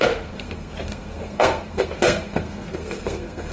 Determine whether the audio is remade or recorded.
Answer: remade